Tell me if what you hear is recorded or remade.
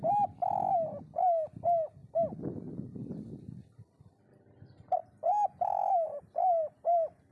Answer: recorded